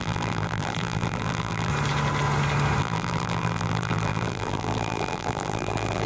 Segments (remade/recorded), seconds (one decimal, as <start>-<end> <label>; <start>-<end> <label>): 0.0-1.7 remade; 1.7-2.8 recorded; 2.8-6.1 remade